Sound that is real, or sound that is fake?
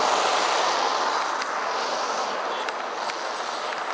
real